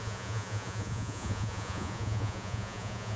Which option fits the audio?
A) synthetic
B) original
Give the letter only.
A